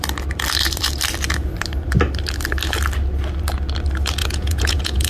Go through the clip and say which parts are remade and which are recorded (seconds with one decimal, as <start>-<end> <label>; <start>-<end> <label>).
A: 0.0-4.2 recorded; 4.2-5.1 remade